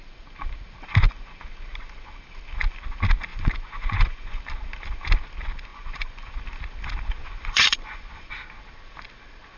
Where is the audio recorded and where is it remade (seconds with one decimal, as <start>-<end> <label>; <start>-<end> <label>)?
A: 0.0-3.3 recorded; 3.3-4.4 remade; 4.4-5.7 recorded; 5.7-6.3 remade; 6.3-7.2 recorded; 7.2-8.3 remade; 8.3-9.6 recorded